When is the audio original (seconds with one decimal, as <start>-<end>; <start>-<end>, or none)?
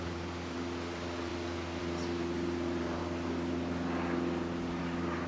1.3-1.8; 3.0-4.8